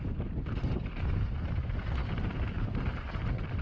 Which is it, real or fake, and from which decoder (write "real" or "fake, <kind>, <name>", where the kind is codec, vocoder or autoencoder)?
real